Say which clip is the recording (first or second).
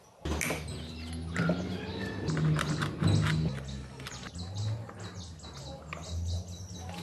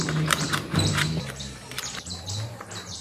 first